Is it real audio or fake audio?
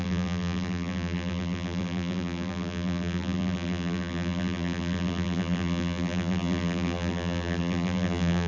fake